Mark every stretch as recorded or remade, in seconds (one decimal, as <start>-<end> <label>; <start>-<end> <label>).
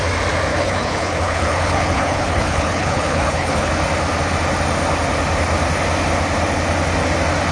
0.0-0.5 recorded; 0.5-3.7 remade; 3.7-7.5 recorded